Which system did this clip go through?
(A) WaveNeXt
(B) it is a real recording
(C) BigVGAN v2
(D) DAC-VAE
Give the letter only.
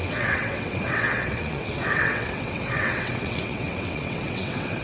A